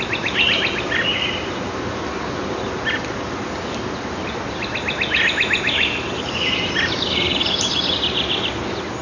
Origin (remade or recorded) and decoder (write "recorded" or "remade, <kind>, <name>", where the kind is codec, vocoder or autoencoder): recorded